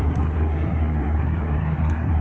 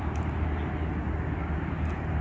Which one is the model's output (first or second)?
first